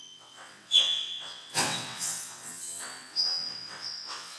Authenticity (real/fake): fake